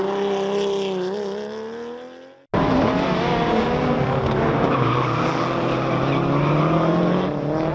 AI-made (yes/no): no